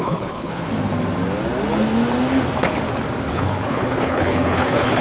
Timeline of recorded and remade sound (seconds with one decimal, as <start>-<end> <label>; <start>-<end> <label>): 0.0-0.7 remade; 0.7-3.3 recorded; 3.3-5.0 remade